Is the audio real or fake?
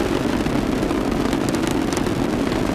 fake